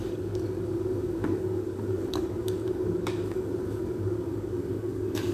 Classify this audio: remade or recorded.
remade